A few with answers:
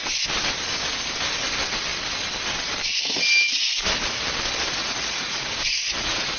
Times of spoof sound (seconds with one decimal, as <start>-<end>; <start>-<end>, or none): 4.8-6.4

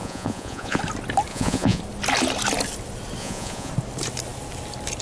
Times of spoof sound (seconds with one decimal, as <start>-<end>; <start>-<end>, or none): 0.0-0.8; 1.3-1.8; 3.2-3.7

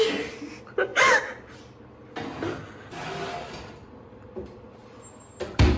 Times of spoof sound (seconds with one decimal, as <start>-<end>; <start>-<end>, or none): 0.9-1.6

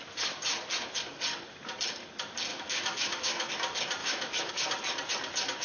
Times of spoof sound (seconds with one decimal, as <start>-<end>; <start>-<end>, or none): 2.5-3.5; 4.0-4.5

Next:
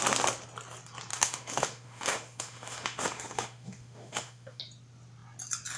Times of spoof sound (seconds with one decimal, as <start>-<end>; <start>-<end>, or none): 1.1-4.6

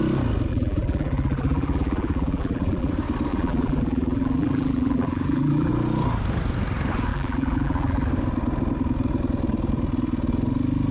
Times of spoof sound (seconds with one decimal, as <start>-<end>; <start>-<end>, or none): 0.5-2.9; 3.3-5.7; 7.1-8.1

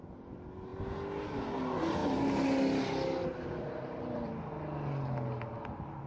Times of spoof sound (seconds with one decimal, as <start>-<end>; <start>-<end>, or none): 3.2-4.5

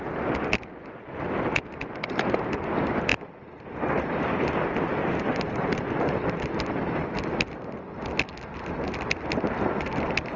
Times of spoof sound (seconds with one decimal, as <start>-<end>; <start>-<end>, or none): none